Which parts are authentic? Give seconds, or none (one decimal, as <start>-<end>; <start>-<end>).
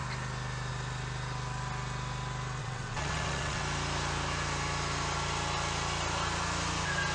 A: 0.0-2.6; 3.6-7.1